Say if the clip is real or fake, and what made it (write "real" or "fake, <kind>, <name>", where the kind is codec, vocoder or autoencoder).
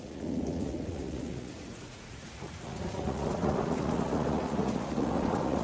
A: fake, vocoder, Vocos